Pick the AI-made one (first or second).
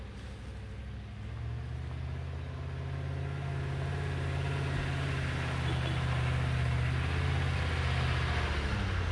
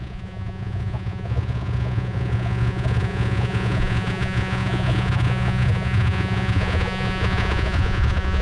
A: second